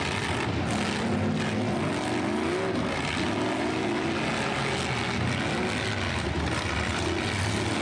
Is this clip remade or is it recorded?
recorded